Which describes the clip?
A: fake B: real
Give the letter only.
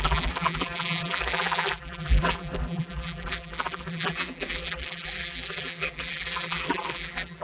A